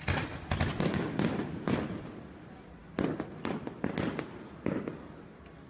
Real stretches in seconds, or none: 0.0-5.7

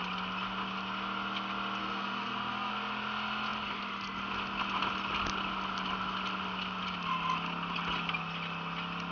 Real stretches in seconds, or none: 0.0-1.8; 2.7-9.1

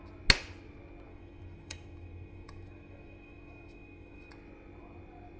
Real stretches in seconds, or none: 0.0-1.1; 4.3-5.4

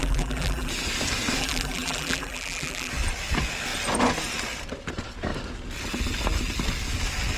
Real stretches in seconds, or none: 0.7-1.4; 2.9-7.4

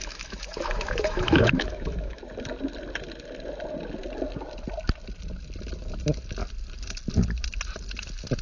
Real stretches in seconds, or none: 2.2-8.4